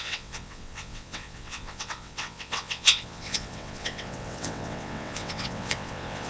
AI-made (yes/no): yes